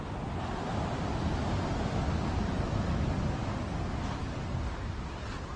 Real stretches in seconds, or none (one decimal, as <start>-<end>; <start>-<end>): 0.0-5.6